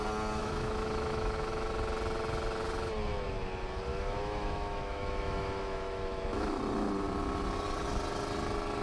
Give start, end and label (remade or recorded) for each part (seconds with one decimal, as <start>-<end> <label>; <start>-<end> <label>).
0.0-0.4 recorded; 0.4-1.7 remade; 1.7-3.9 recorded; 3.9-6.6 remade; 6.6-8.8 recorded